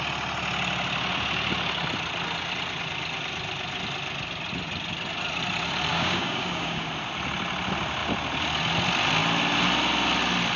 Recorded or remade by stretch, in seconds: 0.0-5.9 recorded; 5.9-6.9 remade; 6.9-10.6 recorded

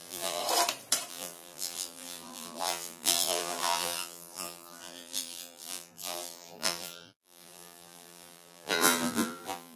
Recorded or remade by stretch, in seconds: 0.0-0.4 remade; 0.4-1.1 recorded; 1.1-9.8 remade

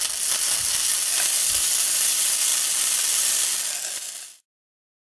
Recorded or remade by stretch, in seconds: 0.0-5.0 recorded

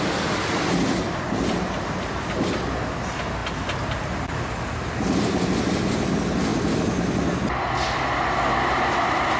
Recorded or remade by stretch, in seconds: 0.0-9.4 recorded